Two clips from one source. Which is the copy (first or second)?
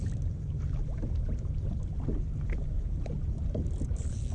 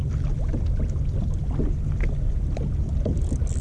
first